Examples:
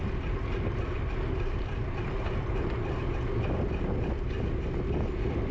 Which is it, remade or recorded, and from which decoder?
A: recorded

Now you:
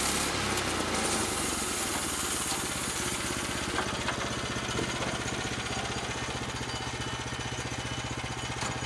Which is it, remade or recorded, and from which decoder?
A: recorded